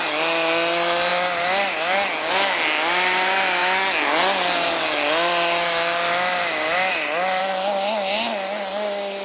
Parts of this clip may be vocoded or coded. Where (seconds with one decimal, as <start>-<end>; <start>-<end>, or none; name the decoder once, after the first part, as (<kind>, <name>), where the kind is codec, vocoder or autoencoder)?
none